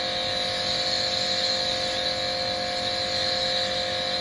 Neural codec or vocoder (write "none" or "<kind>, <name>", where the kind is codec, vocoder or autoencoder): none